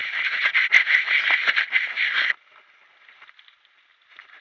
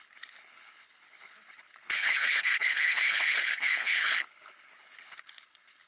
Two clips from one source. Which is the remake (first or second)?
second